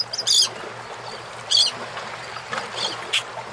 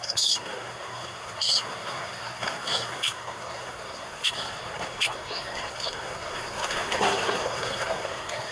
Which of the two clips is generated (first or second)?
second